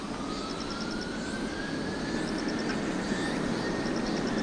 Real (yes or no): yes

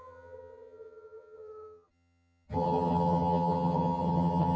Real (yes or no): no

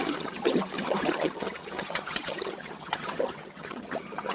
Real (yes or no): no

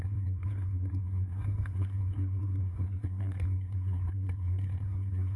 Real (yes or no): no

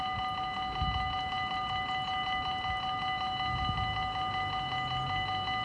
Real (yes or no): yes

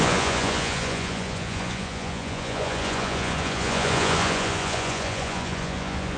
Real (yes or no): no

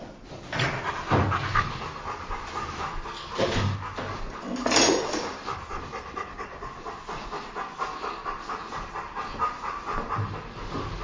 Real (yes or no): yes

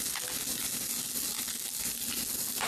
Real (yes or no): yes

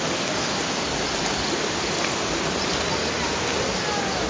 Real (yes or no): yes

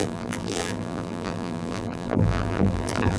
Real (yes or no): no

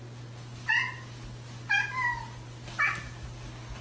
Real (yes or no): yes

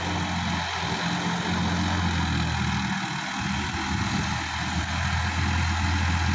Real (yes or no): yes